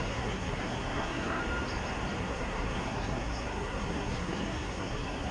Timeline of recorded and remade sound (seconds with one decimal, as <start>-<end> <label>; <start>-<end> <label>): 0.0-1.4 remade; 1.4-2.2 recorded; 2.2-5.3 remade